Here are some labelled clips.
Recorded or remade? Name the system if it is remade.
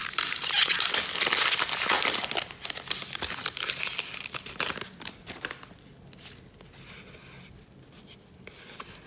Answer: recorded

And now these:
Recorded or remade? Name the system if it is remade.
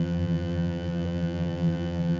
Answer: remade, vocoder, BigVGAN v2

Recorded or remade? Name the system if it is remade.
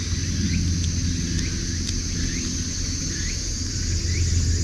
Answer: recorded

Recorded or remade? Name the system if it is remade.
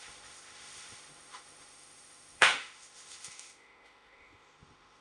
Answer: remade, autoencoder, DAC-VAE